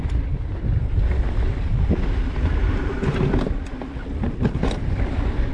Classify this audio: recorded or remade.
recorded